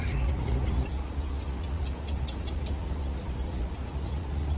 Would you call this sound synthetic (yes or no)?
yes